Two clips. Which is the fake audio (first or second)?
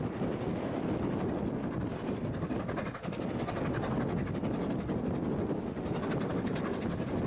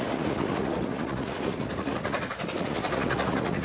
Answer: second